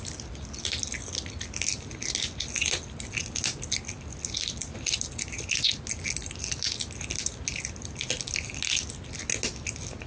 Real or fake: real